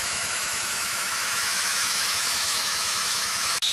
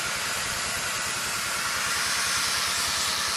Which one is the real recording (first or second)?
second